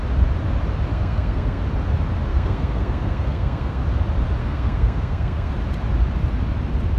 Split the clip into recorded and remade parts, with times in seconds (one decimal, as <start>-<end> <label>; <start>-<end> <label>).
0.0-0.9 recorded; 0.9-1.6 remade; 1.6-2.3 recorded; 2.3-3.8 remade; 3.8-4.4 recorded; 4.4-5.5 remade; 5.5-7.0 recorded